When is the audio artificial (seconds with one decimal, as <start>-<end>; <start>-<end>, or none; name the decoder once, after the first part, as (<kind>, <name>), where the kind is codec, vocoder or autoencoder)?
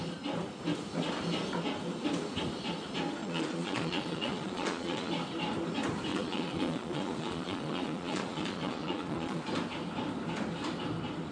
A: 3.2-5.1 (vocoder, Vocos); 6.1-9.4